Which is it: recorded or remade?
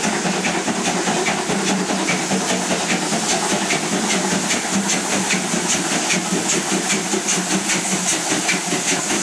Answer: remade